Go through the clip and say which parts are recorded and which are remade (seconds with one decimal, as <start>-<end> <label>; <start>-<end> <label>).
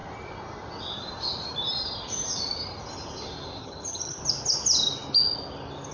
0.0-3.6 recorded; 3.6-4.2 remade; 4.2-5.9 recorded